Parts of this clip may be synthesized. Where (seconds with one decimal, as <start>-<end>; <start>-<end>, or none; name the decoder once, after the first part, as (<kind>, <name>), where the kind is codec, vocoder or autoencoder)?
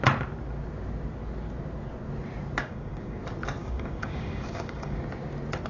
2.6-3.2 (codec, DAC); 3.6-5.0